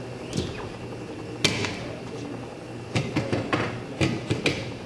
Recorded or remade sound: recorded